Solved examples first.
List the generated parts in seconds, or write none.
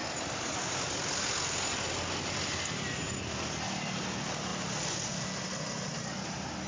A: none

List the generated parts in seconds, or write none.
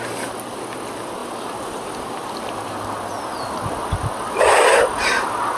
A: none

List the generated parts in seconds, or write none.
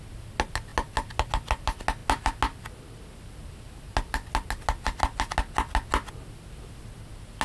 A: none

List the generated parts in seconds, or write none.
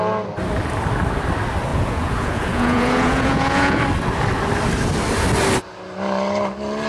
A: 1.7-3.8 (vocoder, Vocos)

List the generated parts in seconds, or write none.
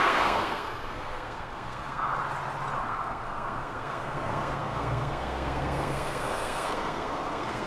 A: 0.0-2.2 (codec, SNAC); 2.8-7.7